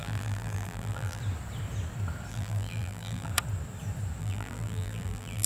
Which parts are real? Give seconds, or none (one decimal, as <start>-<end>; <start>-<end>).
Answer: 1.2-2.3; 3.3-4.2